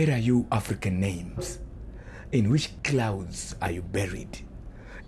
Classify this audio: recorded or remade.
recorded